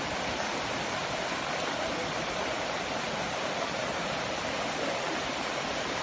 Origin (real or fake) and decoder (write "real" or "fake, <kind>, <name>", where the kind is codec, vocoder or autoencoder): real